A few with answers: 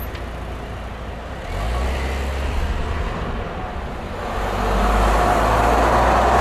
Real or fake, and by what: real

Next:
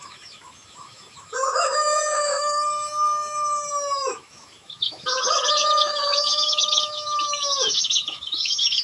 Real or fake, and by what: fake, autoencoder, DAC-VAE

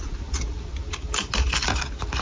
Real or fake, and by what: real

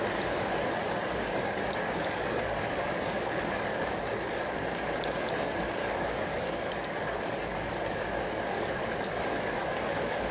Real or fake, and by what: fake, codec, DAC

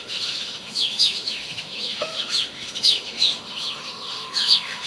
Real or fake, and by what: fake, autoencoder, DAC-VAE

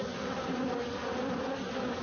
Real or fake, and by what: real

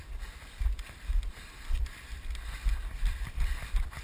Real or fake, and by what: fake, vocoder, BigVGAN v2